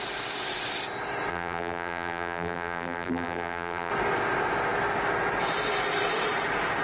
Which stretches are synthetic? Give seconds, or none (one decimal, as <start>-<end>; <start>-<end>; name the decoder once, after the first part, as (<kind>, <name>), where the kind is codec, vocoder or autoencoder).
1.3-3.9 (vocoder, BigVGAN v2)